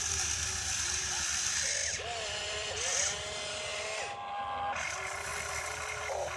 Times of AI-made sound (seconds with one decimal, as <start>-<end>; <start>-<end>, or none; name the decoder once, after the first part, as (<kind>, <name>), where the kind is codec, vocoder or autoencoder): 1.8-2.7 (vocoder, BigVGAN v2); 3.7-4.4